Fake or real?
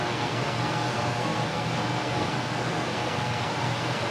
fake